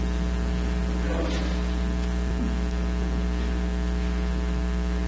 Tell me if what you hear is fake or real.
real